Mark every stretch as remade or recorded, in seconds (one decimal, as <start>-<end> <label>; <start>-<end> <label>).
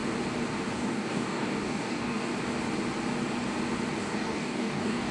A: 0.0-0.7 recorded; 0.7-2.3 remade; 2.3-4.0 recorded; 4.0-5.1 remade